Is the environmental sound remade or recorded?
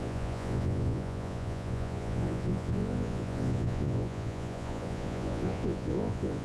remade